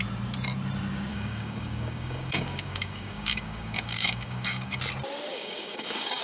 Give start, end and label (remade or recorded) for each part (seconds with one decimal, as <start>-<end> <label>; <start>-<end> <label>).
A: 0.0-1.1 recorded; 1.1-4.8 remade; 4.8-5.3 recorded; 5.3-6.2 remade